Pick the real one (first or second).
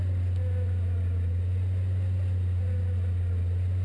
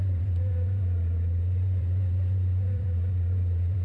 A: first